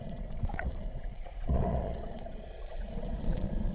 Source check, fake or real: fake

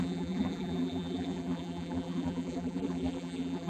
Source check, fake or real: fake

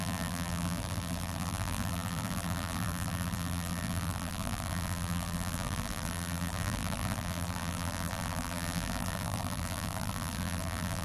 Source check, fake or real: fake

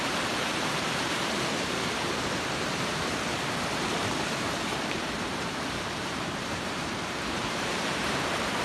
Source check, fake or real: fake